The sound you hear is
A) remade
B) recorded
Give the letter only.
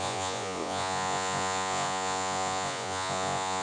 A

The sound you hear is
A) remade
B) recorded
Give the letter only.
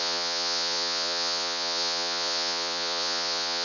A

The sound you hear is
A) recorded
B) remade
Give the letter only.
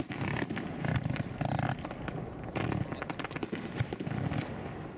A